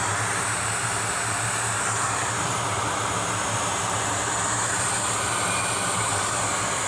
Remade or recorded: remade